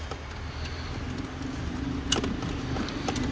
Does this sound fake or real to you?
real